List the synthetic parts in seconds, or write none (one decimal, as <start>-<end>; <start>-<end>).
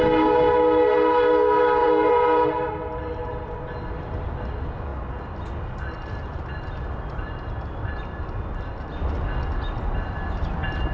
1.8-2.7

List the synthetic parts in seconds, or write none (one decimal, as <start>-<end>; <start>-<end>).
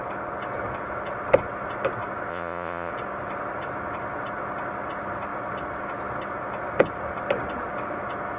2.3-2.9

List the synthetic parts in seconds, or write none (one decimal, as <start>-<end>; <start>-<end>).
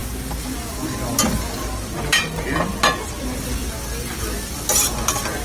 none